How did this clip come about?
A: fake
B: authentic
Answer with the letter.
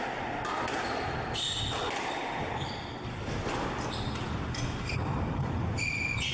A